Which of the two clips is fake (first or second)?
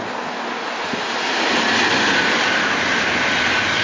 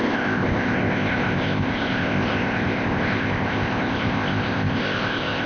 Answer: second